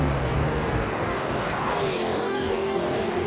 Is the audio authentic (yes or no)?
no